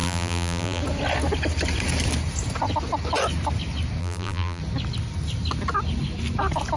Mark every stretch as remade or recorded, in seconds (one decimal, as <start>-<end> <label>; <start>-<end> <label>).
0.0-0.8 remade; 0.8-4.0 recorded; 4.0-4.6 remade; 4.6-6.8 recorded